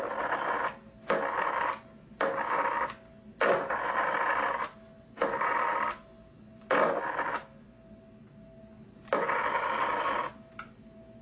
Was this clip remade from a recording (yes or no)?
no